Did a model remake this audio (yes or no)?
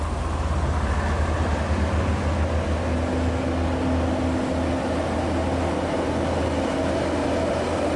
no